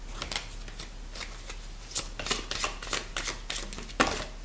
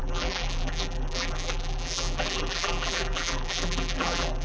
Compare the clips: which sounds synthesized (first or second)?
second